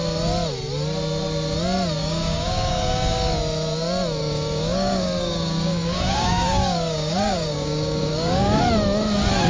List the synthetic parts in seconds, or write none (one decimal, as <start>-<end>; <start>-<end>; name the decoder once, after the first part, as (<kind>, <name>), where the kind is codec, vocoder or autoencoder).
2.0-3.4 (codec, DAC); 4.2-8.6